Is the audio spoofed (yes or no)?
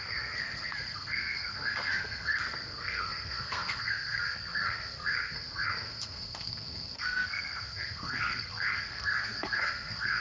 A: yes